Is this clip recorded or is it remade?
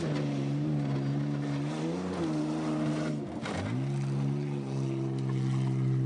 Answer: recorded